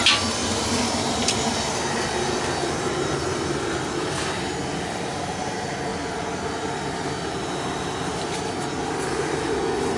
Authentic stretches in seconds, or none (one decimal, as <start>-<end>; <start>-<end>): 0.0-10.0